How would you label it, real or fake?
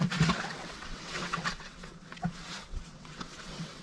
fake